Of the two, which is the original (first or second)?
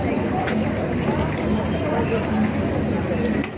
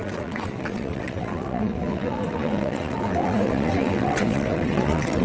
first